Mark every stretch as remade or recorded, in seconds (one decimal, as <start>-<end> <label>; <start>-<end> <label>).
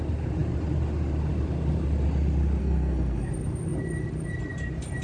0.0-2.6 recorded; 2.6-3.3 remade; 3.3-5.0 recorded